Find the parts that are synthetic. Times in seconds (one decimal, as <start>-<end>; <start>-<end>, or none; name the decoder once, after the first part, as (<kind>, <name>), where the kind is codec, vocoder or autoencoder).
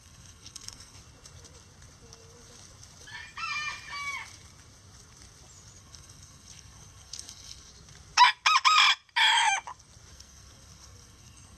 0.0-1.0 (codec, SNAC); 5.8-7.7; 10.1-11.6